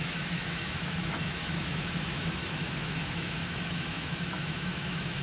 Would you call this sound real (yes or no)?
no